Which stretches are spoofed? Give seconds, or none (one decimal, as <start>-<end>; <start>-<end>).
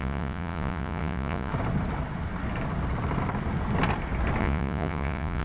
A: 0.0-1.5; 4.4-5.4